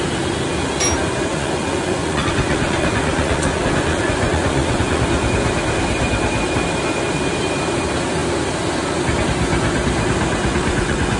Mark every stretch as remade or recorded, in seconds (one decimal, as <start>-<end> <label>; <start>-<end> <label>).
0.0-1.3 recorded; 1.3-5.0 remade; 5.0-10.4 recorded; 10.4-11.2 remade